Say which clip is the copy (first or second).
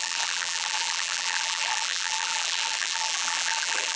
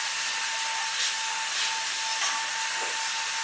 first